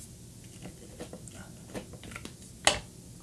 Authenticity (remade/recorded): recorded